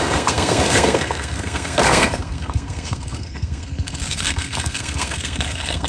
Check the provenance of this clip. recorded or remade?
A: remade